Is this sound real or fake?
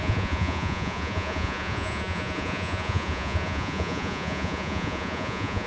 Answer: fake